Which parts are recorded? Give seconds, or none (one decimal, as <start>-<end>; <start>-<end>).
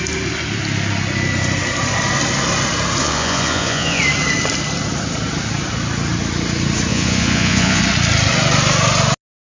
0.0-3.0; 4.0-6.9; 7.8-9.4